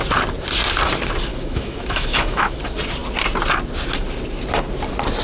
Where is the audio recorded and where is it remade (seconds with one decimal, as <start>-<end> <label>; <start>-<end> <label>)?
0.0-1.3 recorded; 1.3-2.6 remade; 2.6-5.2 recorded